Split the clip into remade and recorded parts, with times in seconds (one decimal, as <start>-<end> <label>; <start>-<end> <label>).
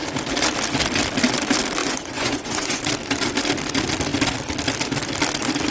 0.0-1.8 recorded; 1.8-2.8 remade; 2.8-5.7 recorded